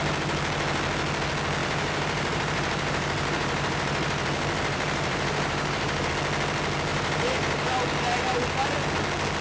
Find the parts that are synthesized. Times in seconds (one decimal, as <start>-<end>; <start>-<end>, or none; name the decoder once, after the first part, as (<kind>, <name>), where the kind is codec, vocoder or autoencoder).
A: 1.6-6.1 (vocoder, BigVGAN v2); 6.9-7.7